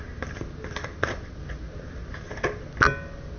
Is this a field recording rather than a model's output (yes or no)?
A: yes